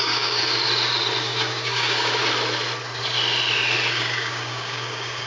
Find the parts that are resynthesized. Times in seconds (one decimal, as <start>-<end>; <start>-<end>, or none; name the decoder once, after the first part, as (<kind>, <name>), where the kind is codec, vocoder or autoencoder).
0.0-0.4 (codec, DAC); 1.2-2.2; 3.9-5.3